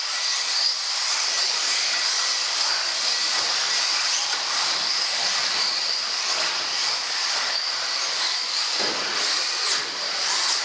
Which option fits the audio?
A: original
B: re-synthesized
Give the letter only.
B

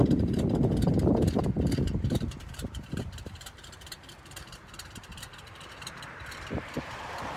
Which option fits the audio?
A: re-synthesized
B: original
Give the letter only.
A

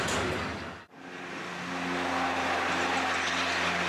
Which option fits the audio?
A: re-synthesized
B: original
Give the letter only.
B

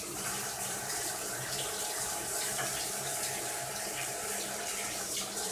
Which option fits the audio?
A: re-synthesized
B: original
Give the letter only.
A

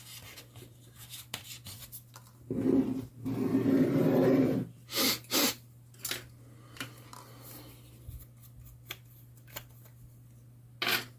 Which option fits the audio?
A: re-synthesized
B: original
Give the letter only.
B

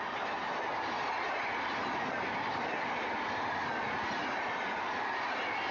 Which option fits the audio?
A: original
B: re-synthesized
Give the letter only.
A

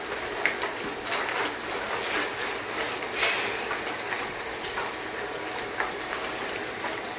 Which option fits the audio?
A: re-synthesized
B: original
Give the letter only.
B